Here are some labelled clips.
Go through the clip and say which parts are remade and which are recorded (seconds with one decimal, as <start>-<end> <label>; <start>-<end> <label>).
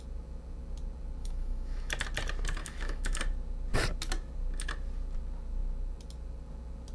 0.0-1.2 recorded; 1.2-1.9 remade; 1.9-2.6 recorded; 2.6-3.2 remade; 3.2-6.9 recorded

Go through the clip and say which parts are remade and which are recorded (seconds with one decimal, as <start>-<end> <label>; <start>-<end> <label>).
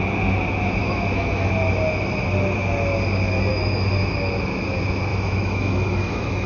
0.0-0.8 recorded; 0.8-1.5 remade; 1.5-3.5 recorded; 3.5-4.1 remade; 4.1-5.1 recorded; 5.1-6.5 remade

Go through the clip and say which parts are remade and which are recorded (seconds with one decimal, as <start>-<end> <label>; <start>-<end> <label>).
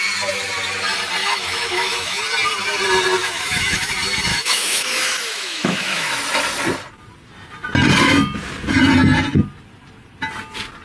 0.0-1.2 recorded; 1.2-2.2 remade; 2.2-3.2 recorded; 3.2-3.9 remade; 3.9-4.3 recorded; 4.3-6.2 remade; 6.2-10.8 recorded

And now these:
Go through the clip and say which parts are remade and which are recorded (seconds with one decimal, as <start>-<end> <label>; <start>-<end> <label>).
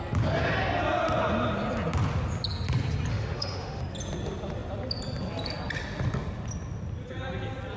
0.0-3.1 recorded; 3.1-3.8 remade; 3.8-7.8 recorded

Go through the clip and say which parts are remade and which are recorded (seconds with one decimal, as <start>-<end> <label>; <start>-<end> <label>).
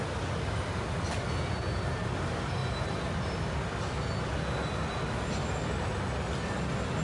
0.0-7.0 recorded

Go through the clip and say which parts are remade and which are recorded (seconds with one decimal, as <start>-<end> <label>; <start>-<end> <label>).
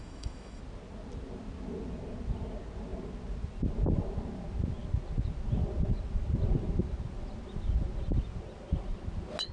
0.0-0.6 remade; 0.6-9.5 recorded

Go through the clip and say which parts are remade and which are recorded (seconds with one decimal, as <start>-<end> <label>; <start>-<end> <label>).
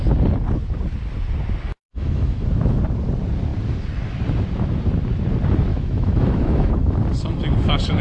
0.0-1.7 recorded; 1.7-2.5 remade; 2.5-5.7 recorded; 5.7-7.0 remade; 7.0-8.0 recorded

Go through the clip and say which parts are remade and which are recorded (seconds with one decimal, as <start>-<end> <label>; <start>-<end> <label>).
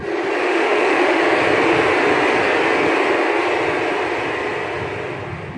0.0-0.4 recorded; 0.4-1.2 remade; 1.2-5.6 recorded